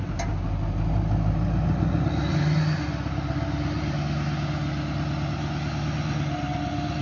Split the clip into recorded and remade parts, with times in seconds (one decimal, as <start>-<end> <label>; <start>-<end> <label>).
0.0-7.0 recorded